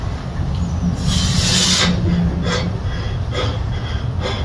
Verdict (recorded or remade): recorded